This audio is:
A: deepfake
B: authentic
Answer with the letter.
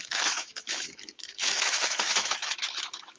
A